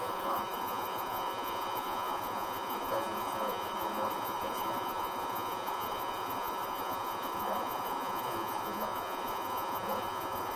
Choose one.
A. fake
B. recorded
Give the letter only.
A